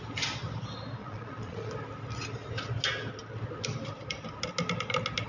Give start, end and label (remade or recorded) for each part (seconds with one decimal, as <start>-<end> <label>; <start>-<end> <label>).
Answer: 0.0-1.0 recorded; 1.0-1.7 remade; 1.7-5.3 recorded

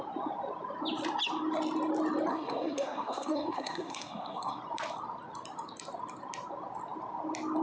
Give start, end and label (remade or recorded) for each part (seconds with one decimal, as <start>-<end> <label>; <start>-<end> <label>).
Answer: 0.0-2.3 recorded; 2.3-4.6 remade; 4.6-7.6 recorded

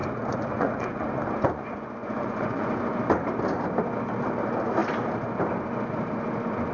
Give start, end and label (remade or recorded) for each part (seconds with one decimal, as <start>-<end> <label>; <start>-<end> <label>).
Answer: 0.0-2.8 remade; 2.8-6.7 recorded

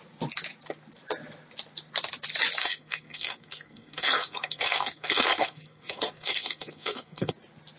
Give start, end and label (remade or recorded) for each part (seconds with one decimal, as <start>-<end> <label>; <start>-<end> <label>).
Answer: 0.0-2.6 recorded; 2.6-7.3 remade; 7.3-7.8 recorded

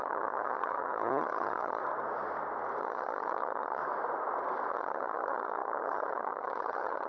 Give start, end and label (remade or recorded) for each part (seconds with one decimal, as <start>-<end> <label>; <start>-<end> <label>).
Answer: 0.0-1.8 remade; 1.8-2.8 recorded; 2.8-3.8 remade; 3.8-4.7 recorded; 4.7-7.1 remade

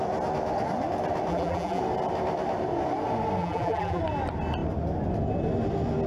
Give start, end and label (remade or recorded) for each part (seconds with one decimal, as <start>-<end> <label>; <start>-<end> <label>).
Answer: 0.0-1.3 recorded; 1.3-1.8 remade; 1.8-3.4 recorded; 3.4-4.0 remade; 4.0-6.1 recorded